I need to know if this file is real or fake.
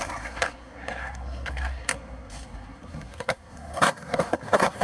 fake